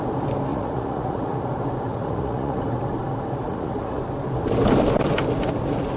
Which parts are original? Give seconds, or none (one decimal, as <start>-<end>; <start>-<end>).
0.0-0.5; 1.4-1.9; 2.6-3.4; 4.0-6.0